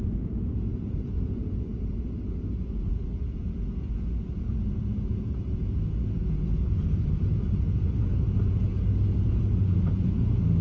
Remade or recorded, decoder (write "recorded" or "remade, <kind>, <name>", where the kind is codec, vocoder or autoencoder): remade, vocoder, Vocos